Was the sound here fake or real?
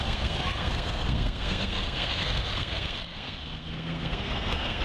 fake